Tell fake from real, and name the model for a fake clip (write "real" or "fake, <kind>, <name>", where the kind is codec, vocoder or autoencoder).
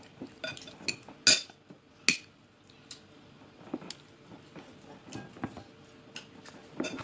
real